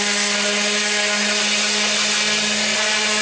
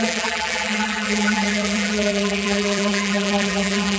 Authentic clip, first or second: first